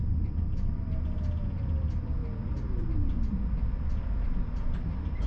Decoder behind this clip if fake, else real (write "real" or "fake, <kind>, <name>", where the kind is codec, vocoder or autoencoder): real